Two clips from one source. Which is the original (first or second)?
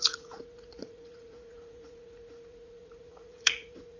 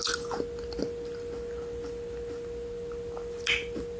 second